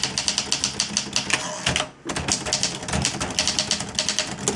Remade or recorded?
recorded